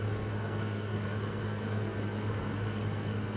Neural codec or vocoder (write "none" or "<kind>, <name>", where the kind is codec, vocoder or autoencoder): codec, SNAC